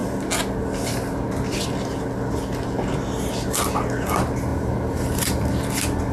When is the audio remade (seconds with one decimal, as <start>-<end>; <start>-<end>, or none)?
4.5-5.5